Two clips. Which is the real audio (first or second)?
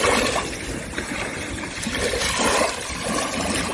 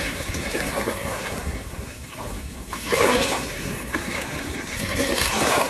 first